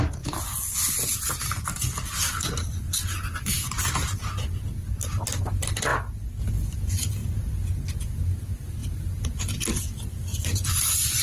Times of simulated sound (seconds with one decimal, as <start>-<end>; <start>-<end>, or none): 8.8-9.5; 10.3-11.2